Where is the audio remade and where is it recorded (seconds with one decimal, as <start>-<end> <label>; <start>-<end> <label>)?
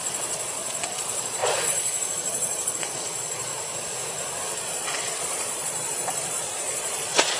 0.0-3.5 remade; 3.5-4.5 recorded; 4.5-7.4 remade